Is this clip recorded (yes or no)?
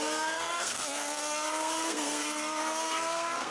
no